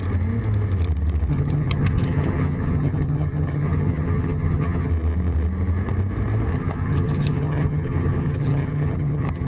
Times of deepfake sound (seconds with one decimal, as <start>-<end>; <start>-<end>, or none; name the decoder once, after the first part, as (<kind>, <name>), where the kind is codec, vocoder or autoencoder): 1.3-4.9 (vocoder, HiFi-GAN); 6.5-9.5

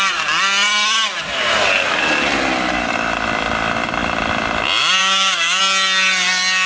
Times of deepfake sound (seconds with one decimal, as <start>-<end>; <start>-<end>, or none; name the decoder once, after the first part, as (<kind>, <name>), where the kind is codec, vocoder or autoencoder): 5.0-5.6 (codec, DAC)

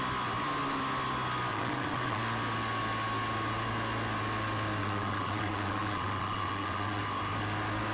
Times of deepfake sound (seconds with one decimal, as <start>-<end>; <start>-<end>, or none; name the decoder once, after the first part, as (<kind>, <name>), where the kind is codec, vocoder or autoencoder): 1.5-2.2 (vocoder, WaveNeXt); 4.8-7.0

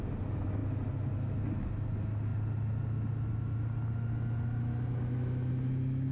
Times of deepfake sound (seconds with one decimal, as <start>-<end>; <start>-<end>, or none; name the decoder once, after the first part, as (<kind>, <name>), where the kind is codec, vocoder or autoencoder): none

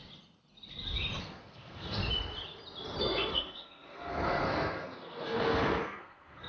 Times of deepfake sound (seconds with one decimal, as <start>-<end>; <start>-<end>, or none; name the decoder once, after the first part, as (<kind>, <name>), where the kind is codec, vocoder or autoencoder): 1.2-2.0 (codec, SNAC); 3.0-6.5

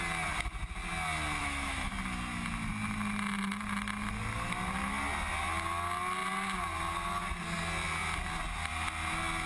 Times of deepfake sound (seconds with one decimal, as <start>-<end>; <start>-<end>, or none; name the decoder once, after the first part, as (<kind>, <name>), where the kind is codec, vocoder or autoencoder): 1.4-1.9 (autoencoder, DAC-VAE)